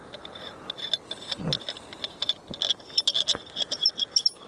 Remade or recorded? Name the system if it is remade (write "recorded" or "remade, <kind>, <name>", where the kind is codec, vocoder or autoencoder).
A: recorded